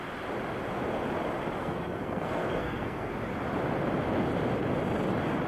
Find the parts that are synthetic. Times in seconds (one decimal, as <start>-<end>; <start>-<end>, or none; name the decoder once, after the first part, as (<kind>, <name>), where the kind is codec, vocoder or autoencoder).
1.6-3.1 (codec, SNAC)